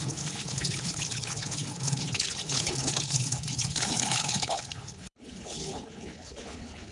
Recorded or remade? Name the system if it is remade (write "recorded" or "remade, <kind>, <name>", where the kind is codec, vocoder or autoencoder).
remade, codec, HILCodec